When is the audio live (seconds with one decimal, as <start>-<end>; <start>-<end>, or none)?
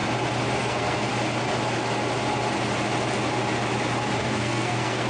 0.0-0.6; 1.1-4.2